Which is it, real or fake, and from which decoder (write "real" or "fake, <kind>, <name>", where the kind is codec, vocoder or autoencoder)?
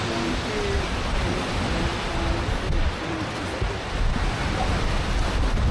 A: real